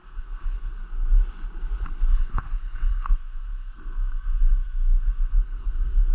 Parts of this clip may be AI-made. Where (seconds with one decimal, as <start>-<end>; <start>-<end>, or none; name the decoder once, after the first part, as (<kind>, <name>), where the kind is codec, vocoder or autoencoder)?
0.0-0.7 (codec, SNAC); 2.1-6.1